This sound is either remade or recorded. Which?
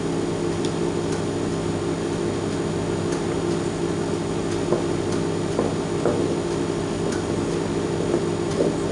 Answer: recorded